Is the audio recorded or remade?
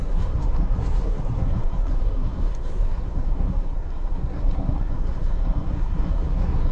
remade